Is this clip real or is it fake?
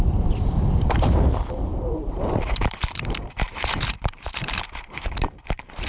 fake